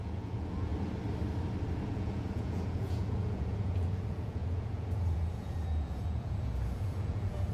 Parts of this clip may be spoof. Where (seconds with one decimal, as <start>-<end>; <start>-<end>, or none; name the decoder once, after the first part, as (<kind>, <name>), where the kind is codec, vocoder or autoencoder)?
0.0-0.7 (vocoder, Vocos); 1.9-7.5